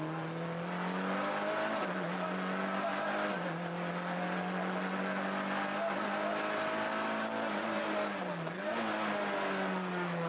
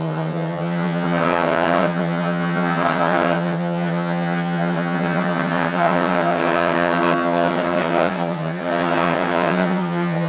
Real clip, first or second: first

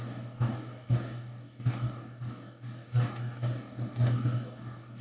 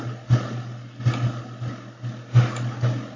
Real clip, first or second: second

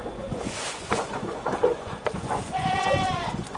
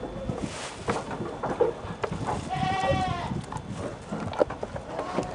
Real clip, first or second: second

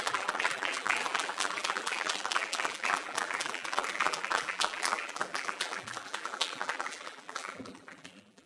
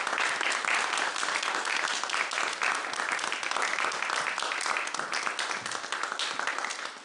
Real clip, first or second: second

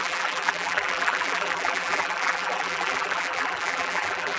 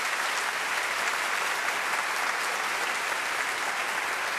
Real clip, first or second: second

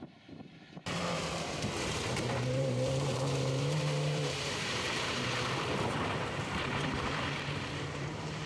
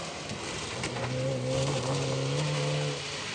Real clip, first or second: second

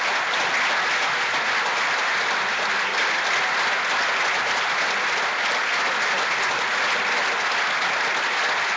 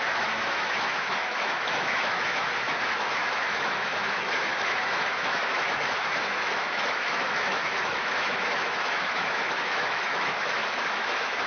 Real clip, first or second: first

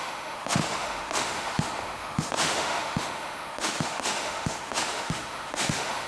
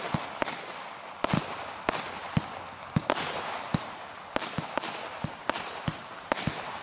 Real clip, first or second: second